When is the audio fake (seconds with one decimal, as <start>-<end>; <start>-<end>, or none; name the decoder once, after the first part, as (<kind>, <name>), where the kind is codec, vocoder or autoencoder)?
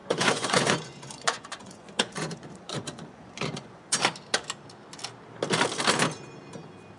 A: 0.0-4.0 (vocoder, Vocos)